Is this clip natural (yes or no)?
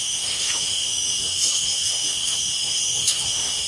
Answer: no